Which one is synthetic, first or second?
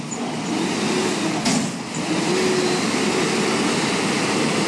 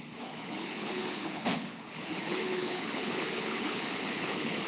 second